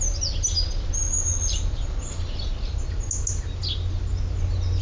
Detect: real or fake real